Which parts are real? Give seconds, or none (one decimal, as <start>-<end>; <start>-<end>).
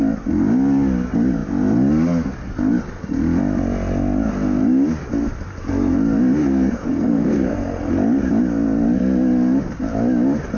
0.0-6.4; 7.9-10.6